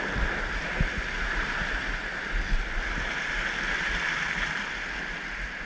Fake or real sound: real